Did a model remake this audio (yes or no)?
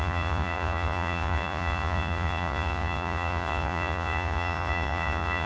yes